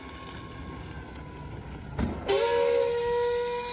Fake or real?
real